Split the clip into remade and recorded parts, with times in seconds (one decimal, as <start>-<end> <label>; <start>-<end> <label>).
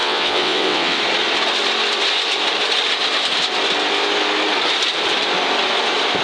0.0-1.0 remade; 1.0-6.2 recorded